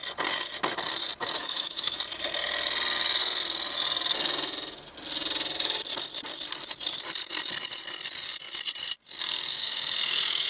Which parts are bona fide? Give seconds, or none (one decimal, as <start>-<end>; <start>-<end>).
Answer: 0.0-1.4; 2.0-9.5